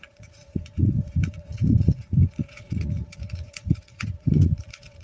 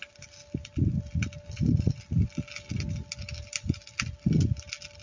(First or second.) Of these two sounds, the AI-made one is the first